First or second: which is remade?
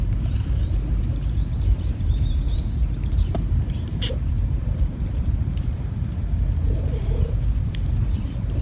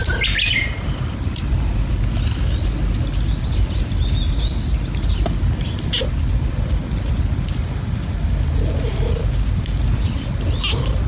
first